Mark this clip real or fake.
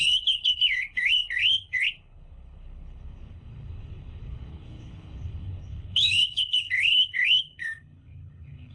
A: fake